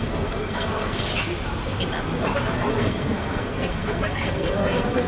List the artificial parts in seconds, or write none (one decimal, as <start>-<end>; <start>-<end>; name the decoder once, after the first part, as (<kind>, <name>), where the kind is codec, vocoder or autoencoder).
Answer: 0.0-1.1 (codec, SNAC); 2.7-5.1